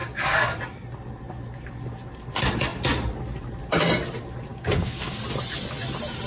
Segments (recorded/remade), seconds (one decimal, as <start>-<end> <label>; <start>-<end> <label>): 0.0-0.6 remade; 0.6-4.5 recorded; 4.5-5.2 remade; 5.2-6.3 recorded